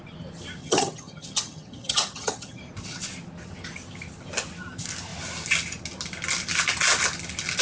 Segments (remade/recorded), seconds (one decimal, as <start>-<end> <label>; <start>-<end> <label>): 0.0-0.6 recorded; 0.6-2.6 remade; 2.6-7.6 recorded